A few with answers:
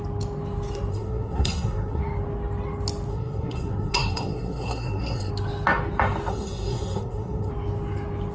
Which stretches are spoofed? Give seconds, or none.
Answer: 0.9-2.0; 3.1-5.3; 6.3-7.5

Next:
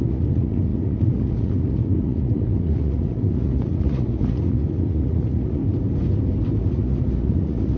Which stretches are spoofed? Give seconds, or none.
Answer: 0.0-5.6; 6.6-7.8

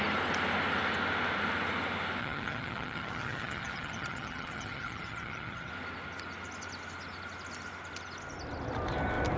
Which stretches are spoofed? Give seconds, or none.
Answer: 2.2-5.7

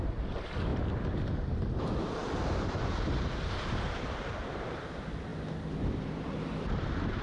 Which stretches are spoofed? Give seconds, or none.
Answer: 0.0-0.7; 1.6-5.3; 5.9-7.2

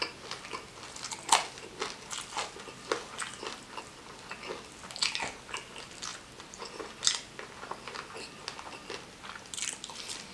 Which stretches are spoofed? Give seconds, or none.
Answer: none

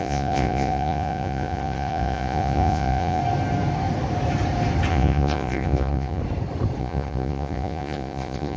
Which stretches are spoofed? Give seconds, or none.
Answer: 0.0-3.2; 4.9-6.2; 6.8-8.6